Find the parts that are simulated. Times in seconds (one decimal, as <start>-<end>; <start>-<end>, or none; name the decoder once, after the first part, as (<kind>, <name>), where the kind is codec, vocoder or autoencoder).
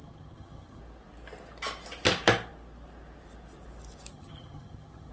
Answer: 0.0-0.8 (vocoder, HiFi-GAN); 4.1-5.1